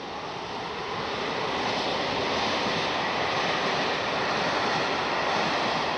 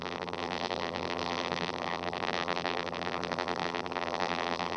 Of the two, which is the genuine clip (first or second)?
first